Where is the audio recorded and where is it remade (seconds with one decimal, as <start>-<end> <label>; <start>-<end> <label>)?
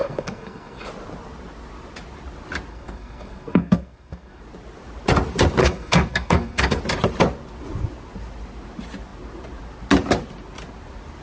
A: 0.0-0.9 remade; 0.9-2.7 recorded; 2.7-4.4 remade; 4.4-5.6 recorded; 5.6-6.8 remade; 6.8-11.2 recorded